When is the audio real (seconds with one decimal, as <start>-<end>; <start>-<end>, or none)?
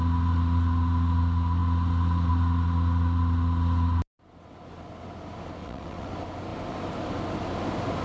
0.0-5.6; 6.1-8.0